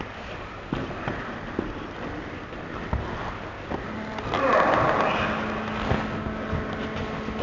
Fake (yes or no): no